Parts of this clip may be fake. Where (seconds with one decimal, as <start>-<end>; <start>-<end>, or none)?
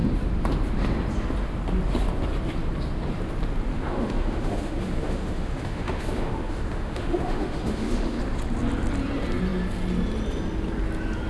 3.7-8.2